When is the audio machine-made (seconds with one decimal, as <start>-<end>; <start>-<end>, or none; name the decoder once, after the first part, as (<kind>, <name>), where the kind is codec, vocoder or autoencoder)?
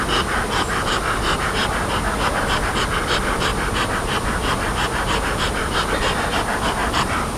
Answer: 6.8-7.4 (vocoder, BigVGAN v2)